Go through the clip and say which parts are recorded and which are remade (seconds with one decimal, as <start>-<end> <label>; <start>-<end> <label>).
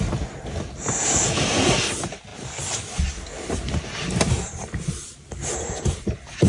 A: 0.0-2.3 recorded; 2.3-6.5 remade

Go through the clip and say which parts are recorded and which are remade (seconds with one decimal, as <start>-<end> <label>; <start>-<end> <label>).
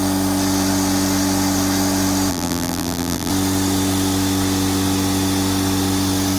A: 0.0-2.3 recorded; 2.3-3.3 remade; 3.3-6.4 recorded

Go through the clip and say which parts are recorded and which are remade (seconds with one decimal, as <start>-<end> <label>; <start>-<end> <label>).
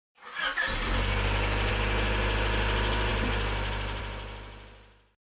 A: 0.0-0.5 recorded; 0.5-1.7 remade; 1.7-3.1 recorded; 3.1-4.0 remade; 4.0-5.4 recorded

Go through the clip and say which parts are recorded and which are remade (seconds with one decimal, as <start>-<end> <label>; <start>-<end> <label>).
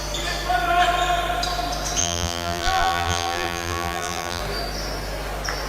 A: 0.0-2.0 recorded; 2.0-4.4 remade; 4.4-5.7 recorded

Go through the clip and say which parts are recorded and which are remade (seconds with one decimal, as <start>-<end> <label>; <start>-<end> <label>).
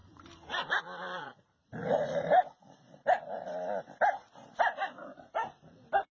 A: 0.0-6.1 remade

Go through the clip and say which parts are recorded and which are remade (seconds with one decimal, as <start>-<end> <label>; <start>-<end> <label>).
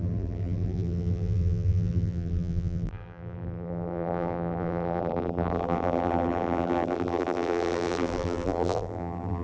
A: 0.0-9.4 remade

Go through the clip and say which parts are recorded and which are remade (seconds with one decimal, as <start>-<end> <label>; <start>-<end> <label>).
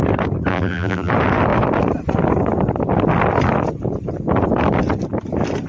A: 0.0-0.5 recorded; 0.5-1.1 remade; 1.1-5.7 recorded